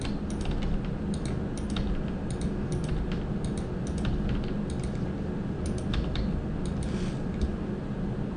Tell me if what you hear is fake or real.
real